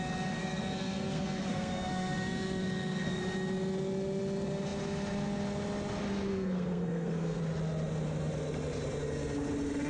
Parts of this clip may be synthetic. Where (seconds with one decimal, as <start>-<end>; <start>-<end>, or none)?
0.4-3.2; 6.3-7.4